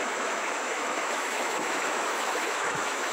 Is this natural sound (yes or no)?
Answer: no